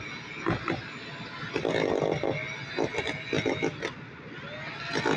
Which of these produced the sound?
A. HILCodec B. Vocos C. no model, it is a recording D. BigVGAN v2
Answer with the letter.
C